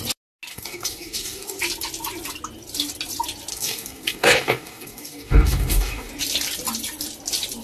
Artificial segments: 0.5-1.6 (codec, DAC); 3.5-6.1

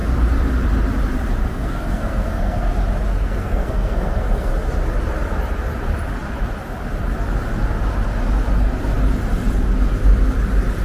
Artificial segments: 1.5-2.7 (codec, SNAC); 3.1-4.5

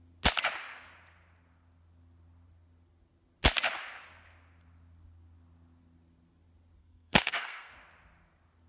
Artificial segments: 6.8-7.7 (codec, SNAC)

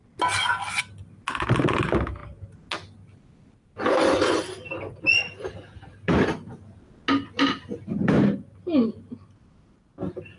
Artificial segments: none